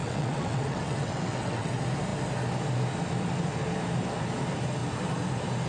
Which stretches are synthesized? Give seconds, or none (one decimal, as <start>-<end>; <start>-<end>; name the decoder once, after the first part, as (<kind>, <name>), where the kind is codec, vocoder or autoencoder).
0.0-1.7 (vocoder, WaveNeXt)